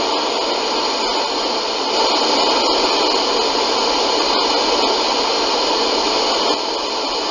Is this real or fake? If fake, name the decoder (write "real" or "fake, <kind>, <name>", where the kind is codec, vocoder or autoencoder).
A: real